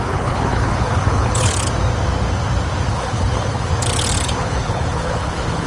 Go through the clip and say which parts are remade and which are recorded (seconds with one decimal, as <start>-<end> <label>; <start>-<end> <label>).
0.0-1.5 remade; 1.5-2.9 recorded; 2.9-3.7 remade; 3.7-4.4 recorded; 4.4-5.7 remade

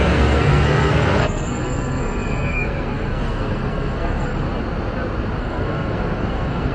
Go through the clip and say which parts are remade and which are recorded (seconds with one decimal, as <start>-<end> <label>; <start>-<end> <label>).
0.0-4.3 remade; 4.3-5.4 recorded; 5.4-6.7 remade

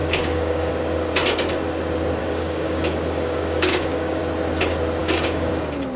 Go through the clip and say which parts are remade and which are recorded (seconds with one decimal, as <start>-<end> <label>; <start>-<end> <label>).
0.0-0.7 remade; 0.7-2.2 recorded; 2.2-4.2 remade; 4.2-5.0 recorded; 5.0-5.5 remade; 5.5-6.0 recorded

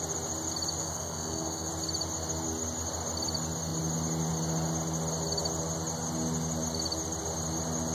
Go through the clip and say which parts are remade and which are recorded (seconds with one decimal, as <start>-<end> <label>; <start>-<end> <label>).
0.0-0.8 recorded; 0.8-1.7 remade; 1.7-7.9 recorded